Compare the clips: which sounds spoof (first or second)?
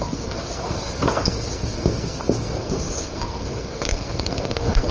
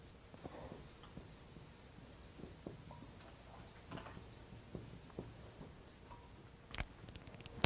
first